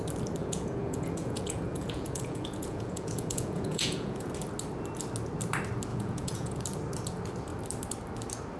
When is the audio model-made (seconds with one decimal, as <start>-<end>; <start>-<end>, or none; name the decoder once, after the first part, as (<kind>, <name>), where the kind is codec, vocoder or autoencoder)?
0.4-4.3 (vocoder, Vocos); 5.9-6.6